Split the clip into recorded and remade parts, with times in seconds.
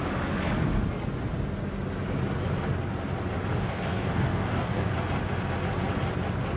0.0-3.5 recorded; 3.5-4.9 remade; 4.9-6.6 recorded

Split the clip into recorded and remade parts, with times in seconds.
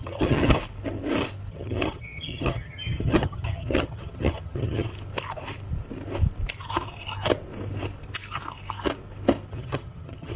0.0-0.6 remade; 0.6-1.5 recorded; 1.5-4.9 remade; 4.9-9.5 recorded; 9.5-10.4 remade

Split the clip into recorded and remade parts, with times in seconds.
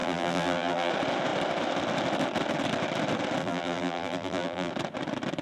0.0-0.9 remade; 0.9-3.4 recorded; 3.4-4.7 remade; 4.7-5.4 recorded